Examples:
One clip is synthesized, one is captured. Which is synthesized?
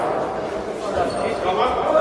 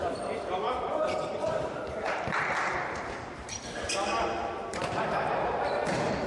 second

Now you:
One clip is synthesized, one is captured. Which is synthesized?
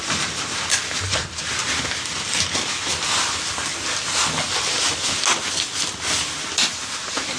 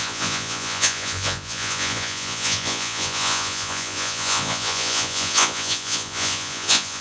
second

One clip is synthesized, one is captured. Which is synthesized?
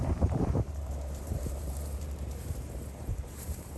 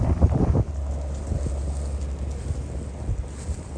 first